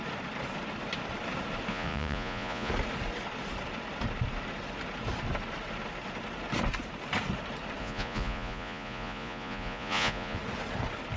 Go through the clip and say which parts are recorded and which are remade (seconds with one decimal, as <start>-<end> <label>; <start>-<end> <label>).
0.0-1.7 recorded; 1.7-2.7 remade; 2.7-7.8 recorded; 7.8-10.4 remade; 10.4-11.2 recorded